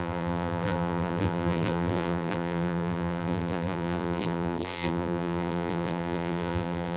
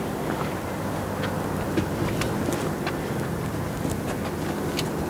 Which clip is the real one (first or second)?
second